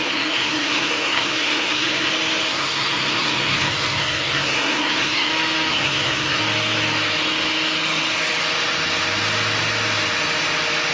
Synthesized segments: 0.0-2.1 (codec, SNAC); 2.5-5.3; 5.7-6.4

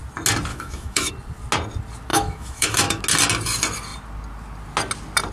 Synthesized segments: 0.5-1.1 (autoencoder, DAC-VAE); 2.1-3.0

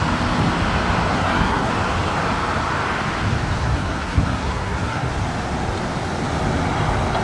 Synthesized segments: 1.1-1.7 (codec, SNAC); 3.6-5.1

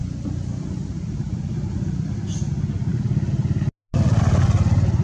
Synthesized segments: none

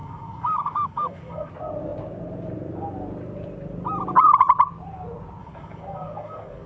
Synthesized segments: 0.0-1.5 (codec, DAC); 5.4-6.7

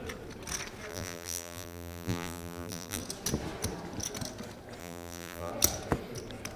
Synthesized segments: 0.9-3.0 (vocoder, BigVGAN v2); 4.8-5.5

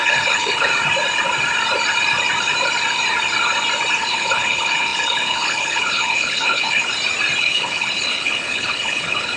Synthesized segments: 0.0-0.7 (codec, HILCodec); 4.0-6.8; 7.4-9.4